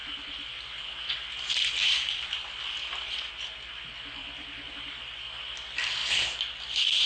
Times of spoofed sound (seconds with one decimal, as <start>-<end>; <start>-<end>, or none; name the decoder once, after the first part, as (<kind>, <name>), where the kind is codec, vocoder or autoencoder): 0.0-2.8 (vocoder, BigVGAN v2); 4.2-4.7; 6.0-7.1

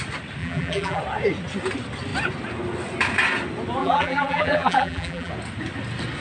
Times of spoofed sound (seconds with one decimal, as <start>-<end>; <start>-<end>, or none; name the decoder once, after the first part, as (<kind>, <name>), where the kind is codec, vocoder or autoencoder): 0.4-1.0 (vocoder, BigVGAN v2); 3.8-5.3

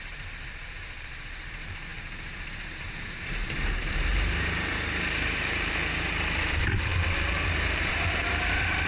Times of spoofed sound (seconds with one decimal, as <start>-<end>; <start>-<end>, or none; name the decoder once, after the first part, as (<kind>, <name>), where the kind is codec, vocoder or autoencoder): 0.0-8.9 (vocoder, BigVGAN v2)

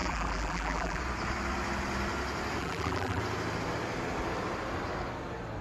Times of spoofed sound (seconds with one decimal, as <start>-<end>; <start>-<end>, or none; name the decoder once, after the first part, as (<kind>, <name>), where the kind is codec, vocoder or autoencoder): 0.0-1.0 (vocoder, BigVGAN v2); 2.6-3.2